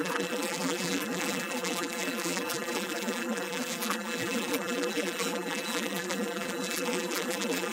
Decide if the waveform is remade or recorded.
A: remade